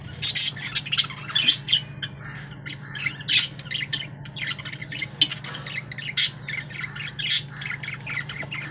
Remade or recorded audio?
recorded